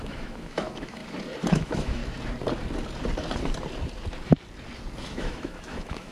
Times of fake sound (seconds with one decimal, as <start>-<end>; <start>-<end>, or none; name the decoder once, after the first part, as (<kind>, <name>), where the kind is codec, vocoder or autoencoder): 0.0-1.0 (autoencoder, DAC-VAE); 1.5-2.0; 5.0-6.1